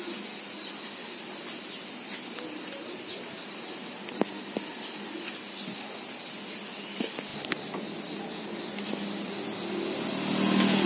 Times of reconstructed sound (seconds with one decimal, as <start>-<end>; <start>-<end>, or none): none